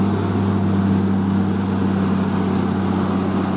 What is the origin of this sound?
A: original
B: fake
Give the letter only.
A